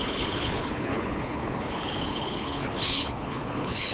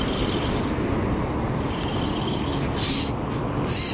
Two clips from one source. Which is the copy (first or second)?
first